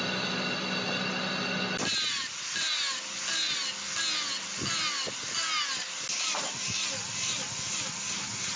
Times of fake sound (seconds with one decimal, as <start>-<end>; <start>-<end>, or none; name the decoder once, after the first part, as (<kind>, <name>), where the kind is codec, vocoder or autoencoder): none